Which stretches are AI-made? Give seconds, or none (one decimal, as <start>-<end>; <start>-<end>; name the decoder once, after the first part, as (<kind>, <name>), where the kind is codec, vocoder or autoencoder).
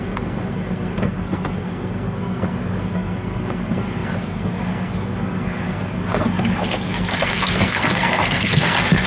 0.0-9.1 (codec, SNAC)